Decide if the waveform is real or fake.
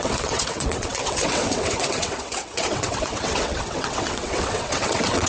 fake